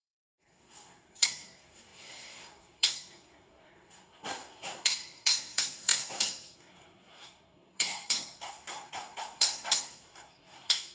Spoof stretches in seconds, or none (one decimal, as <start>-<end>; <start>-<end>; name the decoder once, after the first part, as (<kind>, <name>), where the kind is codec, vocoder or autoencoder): 0.0-10.9 (codec, SNAC)